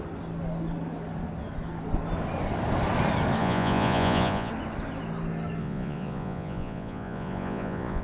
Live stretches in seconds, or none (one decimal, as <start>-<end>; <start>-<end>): 0.0-3.4; 4.5-5.6